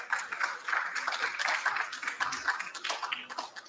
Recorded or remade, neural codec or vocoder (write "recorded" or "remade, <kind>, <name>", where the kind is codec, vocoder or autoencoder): recorded